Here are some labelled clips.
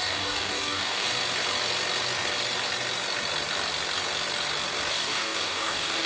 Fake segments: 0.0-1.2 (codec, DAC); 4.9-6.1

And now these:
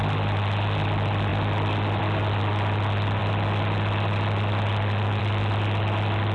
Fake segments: none

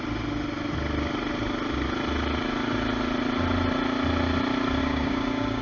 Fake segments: 4.8-5.6 (codec, DAC)

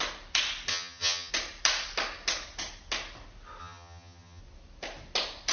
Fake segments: 0.7-1.3 (vocoder, HiFi-GAN); 3.6-4.4

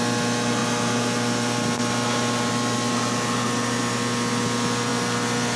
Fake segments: none

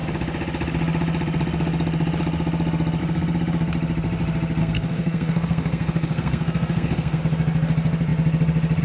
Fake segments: 4.6-7.2 (codec, SNAC)